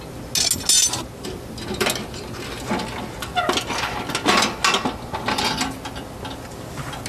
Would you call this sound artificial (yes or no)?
no